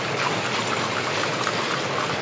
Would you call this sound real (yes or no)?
yes